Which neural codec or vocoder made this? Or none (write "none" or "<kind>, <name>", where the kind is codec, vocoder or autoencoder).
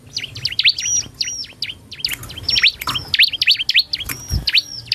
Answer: none